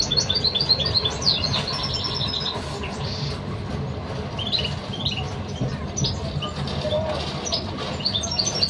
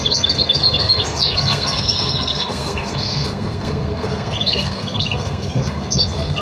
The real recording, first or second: first